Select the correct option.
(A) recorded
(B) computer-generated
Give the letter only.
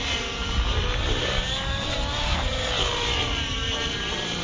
B